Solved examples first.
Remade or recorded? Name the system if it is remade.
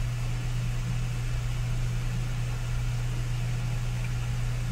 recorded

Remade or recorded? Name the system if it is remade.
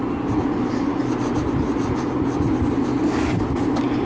recorded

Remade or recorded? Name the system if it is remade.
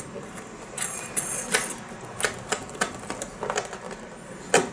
recorded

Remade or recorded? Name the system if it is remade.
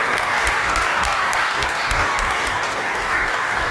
remade, codec, DAC